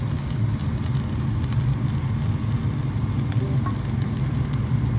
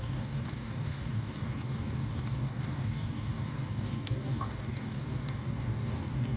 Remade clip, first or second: second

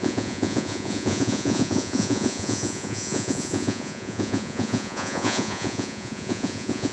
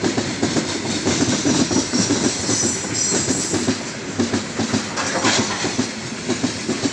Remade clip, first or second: first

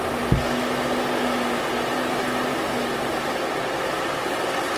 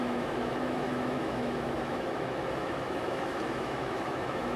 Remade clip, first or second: second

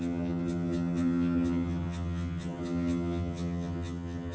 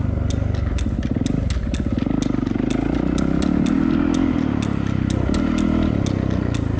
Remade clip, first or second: first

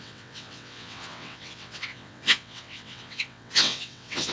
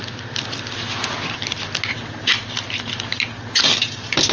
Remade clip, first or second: first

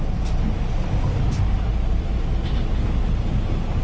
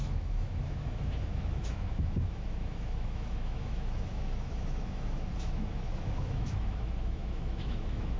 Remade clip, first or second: second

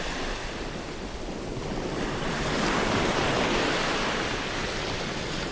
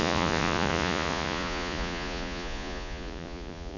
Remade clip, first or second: second